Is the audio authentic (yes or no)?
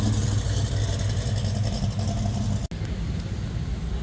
yes